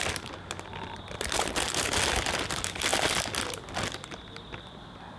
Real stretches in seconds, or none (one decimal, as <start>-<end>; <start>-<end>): 0.0-5.2